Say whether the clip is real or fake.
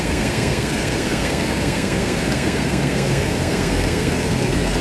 fake